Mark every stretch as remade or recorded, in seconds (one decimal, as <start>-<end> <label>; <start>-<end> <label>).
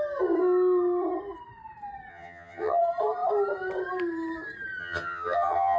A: 0.0-2.1 recorded; 2.1-2.8 remade; 2.8-4.8 recorded; 4.8-5.8 remade